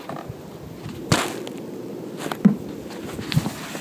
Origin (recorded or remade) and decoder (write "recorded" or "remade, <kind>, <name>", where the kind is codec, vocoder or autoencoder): recorded